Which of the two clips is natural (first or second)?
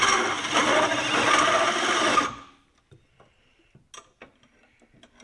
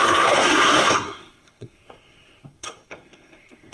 first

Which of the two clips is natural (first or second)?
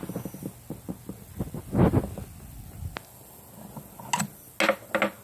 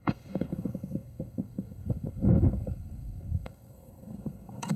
first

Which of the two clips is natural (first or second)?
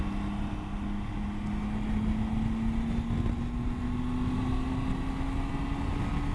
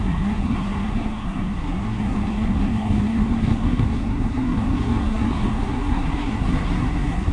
first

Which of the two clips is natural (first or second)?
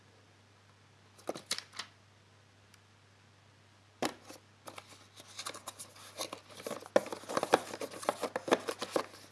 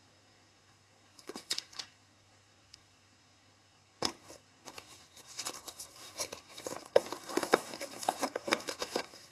first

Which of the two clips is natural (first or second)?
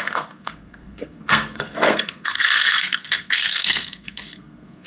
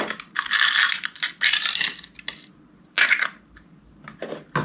second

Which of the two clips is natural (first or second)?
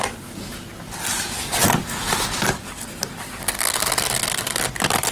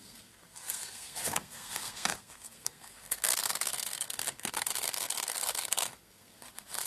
first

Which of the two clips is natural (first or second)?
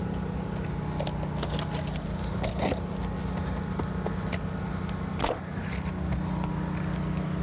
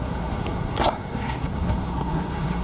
first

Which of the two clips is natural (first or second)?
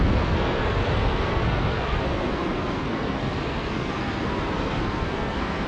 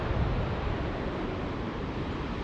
second